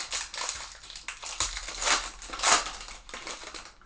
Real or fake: real